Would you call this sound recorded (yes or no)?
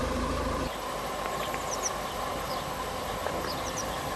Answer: no